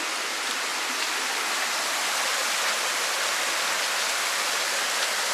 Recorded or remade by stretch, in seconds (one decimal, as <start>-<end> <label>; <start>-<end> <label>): 0.0-5.3 recorded